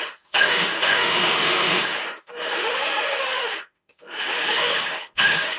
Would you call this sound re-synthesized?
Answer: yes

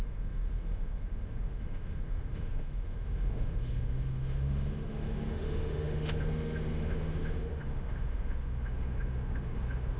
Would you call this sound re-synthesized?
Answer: yes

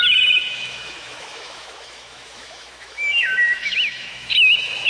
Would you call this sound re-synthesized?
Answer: yes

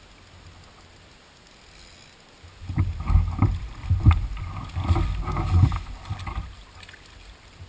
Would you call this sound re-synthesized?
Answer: no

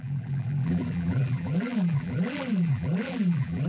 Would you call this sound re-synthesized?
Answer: yes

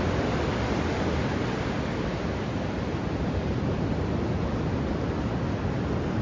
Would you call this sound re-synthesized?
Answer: no